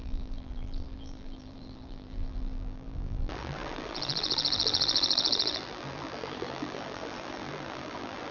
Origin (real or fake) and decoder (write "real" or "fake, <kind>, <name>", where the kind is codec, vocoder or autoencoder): fake, vocoder, BigVGAN v2